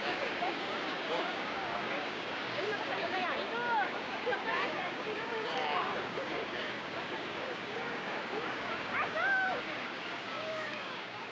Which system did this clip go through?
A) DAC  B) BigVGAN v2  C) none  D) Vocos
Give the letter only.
A